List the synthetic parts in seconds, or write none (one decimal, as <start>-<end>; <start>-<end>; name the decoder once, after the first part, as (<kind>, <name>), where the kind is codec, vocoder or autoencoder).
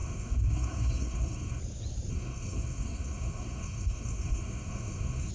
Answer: 0.0-1.6 (codec, SNAC); 2.1-5.3